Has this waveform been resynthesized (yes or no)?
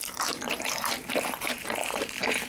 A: yes